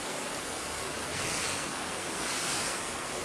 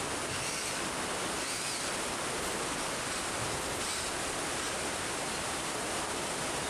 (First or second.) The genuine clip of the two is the second